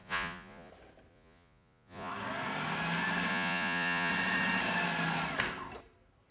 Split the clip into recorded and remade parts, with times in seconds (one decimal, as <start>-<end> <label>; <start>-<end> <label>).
0.0-0.7 remade; 0.7-1.1 recorded; 1.1-2.1 remade; 2.1-3.3 recorded; 3.3-4.1 remade; 4.1-6.3 recorded